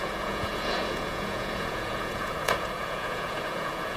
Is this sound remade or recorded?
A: remade